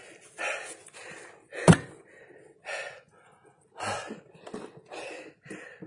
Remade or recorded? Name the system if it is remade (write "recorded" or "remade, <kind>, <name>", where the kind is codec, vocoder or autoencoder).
recorded